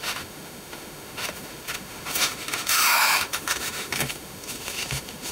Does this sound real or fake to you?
fake